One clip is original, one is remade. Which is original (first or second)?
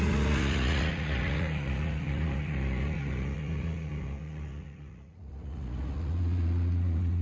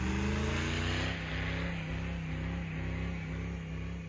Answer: second